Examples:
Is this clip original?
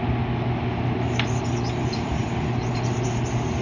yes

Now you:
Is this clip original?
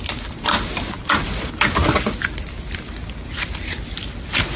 yes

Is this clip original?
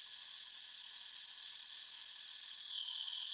yes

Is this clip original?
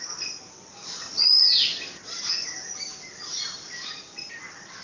yes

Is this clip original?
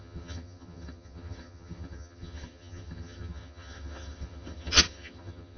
no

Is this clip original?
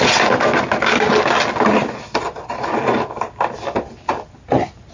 yes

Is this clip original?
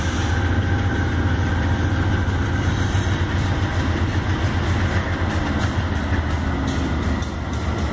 yes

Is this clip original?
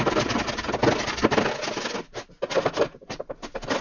yes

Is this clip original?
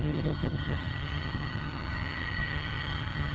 no